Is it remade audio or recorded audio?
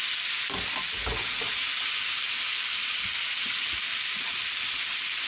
recorded